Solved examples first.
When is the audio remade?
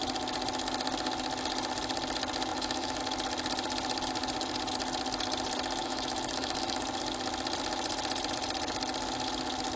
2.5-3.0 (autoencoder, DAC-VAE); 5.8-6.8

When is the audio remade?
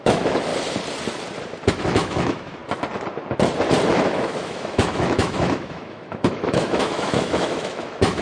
0.0-0.5 (autoencoder, DAC-VAE); 1.7-2.6; 3.9-8.2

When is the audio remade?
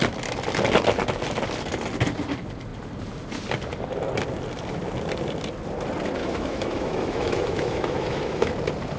6.2-8.5 (autoencoder, DAC-VAE)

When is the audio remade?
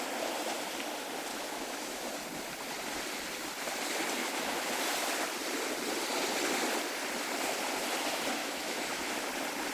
1.3-2.1 (autoencoder, DAC-VAE); 4.2-4.8; 8.4-9.1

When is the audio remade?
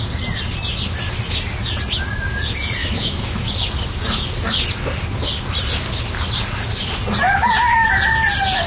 2.8-3.5 (autoencoder, DAC-VAE)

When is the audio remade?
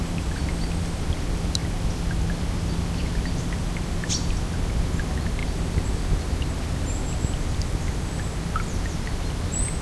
none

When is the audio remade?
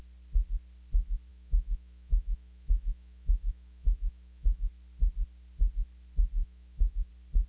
1.3-4.7 (autoencoder, DAC-VAE); 6.4-7.1